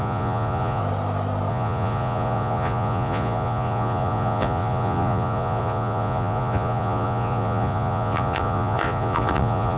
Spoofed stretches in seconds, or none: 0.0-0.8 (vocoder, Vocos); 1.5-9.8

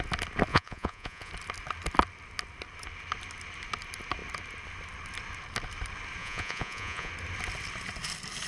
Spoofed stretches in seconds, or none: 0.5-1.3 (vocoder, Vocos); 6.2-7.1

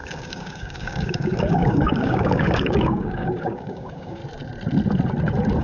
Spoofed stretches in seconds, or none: 0.0-4.2 (codec, DAC)

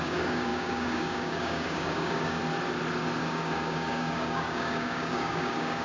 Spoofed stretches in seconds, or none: 0.0-2.4 (codec, DAC); 3.2-5.8

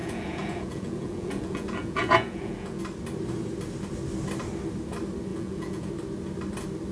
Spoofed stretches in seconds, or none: 0.0-2.8 (vocoder, Vocos); 5.3-5.9

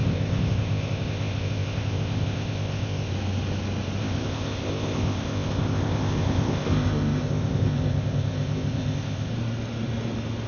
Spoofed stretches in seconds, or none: 0.0-3.1 (codec, ZipCodec); 4.0-9.3

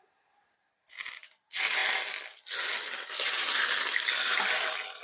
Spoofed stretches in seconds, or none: none

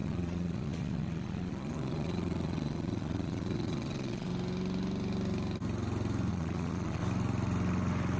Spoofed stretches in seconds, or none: 0.0-4.3 (vocoder, Vocos); 6.3-7.0